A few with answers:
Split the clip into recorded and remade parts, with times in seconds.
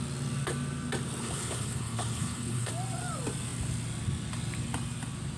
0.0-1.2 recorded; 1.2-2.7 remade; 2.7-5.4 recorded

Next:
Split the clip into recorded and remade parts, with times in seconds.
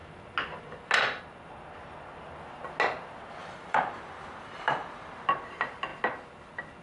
0.0-3.4 recorded; 3.4-5.1 remade; 5.1-6.8 recorded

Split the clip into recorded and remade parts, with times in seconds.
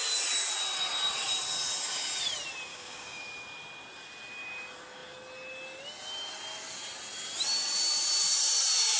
0.0-2.7 recorded; 2.7-3.2 remade; 3.2-9.0 recorded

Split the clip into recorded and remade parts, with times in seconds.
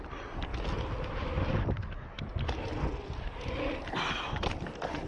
0.0-5.1 recorded